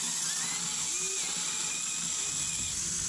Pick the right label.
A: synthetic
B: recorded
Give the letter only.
B